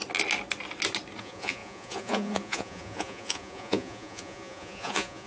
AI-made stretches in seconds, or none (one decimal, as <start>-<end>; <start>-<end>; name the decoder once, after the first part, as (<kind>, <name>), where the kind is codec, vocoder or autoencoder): 1.2-5.3 (vocoder, Vocos)